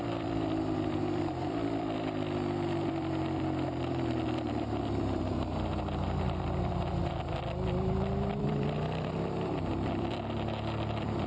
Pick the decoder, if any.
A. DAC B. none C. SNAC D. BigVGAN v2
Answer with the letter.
D